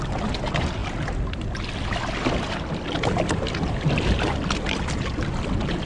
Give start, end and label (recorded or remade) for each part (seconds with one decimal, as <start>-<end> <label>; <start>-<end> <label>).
0.0-5.9 recorded